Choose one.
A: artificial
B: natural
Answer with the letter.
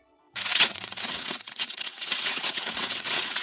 A